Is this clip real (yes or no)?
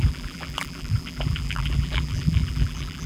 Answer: no